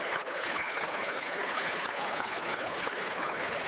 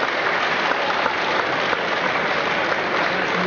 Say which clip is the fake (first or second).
first